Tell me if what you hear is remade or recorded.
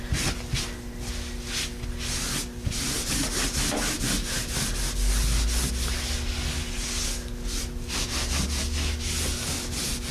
recorded